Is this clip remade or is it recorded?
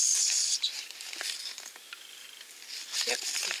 recorded